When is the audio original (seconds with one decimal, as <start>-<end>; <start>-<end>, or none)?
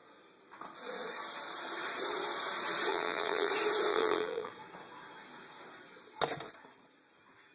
0.0-2.9; 3.5-3.9; 4.5-7.5